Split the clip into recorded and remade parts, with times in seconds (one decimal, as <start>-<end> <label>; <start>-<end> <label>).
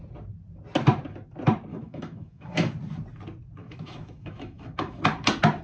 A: 0.0-1.7 recorded; 1.7-2.7 remade; 2.7-3.6 recorded; 3.6-5.0 remade; 5.0-5.6 recorded